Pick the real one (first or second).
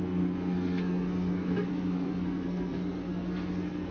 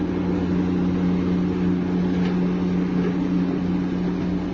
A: second